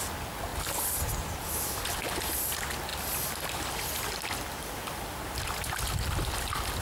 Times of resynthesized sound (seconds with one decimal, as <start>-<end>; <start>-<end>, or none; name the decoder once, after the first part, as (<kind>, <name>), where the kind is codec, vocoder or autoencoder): none